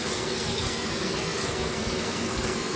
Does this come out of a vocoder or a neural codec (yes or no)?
yes